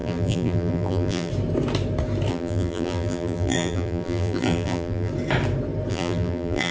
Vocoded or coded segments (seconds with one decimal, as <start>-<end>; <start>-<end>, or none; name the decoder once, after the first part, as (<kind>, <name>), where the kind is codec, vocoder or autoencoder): 0.0-1.3 (vocoder, BigVGAN v2); 2.3-5.1; 5.9-6.7